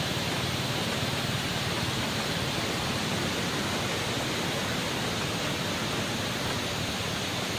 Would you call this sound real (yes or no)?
yes